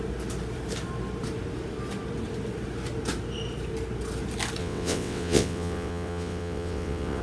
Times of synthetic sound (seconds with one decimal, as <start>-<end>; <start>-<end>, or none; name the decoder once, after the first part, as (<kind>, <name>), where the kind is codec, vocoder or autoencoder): 4.6-7.2 (vocoder, WaveNeXt)